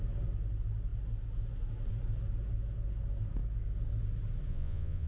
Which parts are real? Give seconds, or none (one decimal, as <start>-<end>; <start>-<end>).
0.0-4.5